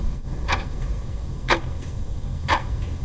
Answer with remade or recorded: remade